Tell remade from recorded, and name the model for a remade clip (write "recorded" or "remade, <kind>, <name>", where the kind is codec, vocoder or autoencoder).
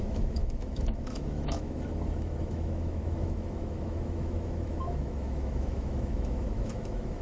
remade, autoencoder, DAC-VAE